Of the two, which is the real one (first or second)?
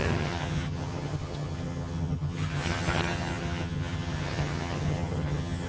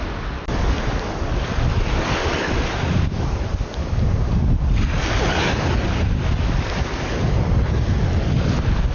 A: second